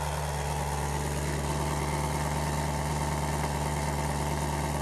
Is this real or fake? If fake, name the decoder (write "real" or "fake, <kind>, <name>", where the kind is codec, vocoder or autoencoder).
real